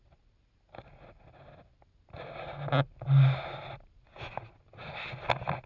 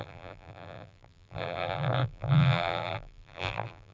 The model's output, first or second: second